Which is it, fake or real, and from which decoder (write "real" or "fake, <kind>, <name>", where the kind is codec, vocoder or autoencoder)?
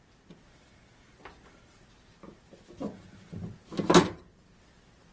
real